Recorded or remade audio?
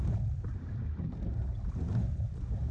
recorded